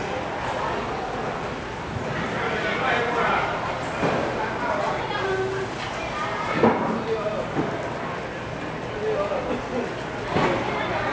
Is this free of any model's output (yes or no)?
yes